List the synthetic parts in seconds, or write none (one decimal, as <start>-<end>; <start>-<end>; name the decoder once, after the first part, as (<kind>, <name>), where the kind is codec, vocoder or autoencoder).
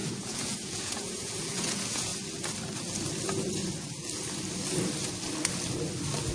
0.0-2.1 (vocoder, Vocos)